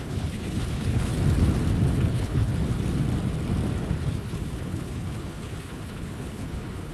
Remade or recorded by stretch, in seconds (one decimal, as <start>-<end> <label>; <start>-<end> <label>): 0.0-1.1 remade; 1.1-2.1 recorded; 2.1-2.5 remade; 2.5-4.1 recorded; 4.1-6.9 remade